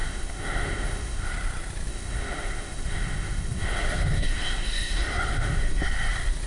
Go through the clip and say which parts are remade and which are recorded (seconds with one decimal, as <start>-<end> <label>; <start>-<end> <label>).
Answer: 0.0-1.3 remade; 1.3-1.9 recorded; 1.9-5.8 remade; 5.8-6.5 recorded